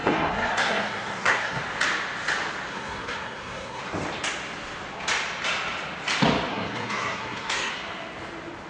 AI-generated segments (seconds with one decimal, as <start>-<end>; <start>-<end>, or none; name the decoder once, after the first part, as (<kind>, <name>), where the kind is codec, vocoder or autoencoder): 0.0-1.6 (codec, SNAC); 2.7-3.8; 6.5-7.7